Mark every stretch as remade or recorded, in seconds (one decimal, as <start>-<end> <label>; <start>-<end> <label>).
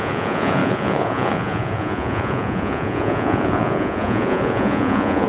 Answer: 0.0-5.3 remade